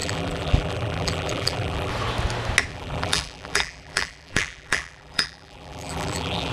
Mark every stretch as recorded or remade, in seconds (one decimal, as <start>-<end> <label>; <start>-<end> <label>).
0.0-1.9 remade; 1.9-2.7 recorded; 2.7-6.5 remade